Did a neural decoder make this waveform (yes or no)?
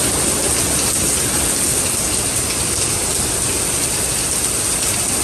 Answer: no